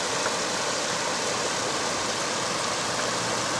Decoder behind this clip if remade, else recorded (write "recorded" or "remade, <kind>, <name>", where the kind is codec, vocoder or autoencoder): recorded